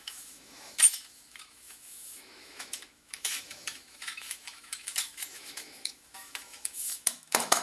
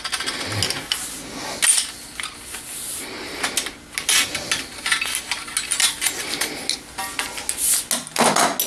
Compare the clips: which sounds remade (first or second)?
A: first